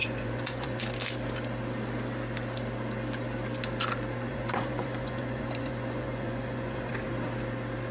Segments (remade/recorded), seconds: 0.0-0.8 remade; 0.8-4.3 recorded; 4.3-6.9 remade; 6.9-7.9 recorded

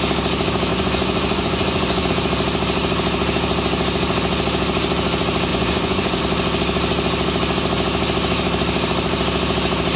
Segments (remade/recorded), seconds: 0.0-0.7 recorded; 0.7-2.1 remade; 2.1-5.5 recorded; 5.5-6.2 remade; 6.2-10.0 recorded

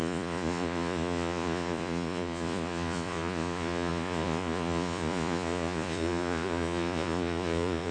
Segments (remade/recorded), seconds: 0.0-7.9 remade

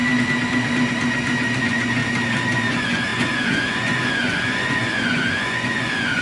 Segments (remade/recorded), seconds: 0.0-1.6 recorded; 1.6-2.0 remade; 2.0-2.7 recorded; 2.7-6.2 remade

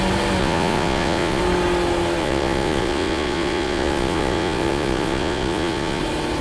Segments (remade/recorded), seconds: 0.0-0.4 recorded; 0.4-1.4 remade; 1.4-2.2 recorded; 2.2-6.0 remade; 6.0-6.4 recorded

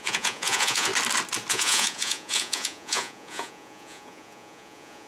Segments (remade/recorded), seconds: 0.0-0.9 remade; 0.9-1.5 recorded; 1.5-5.1 remade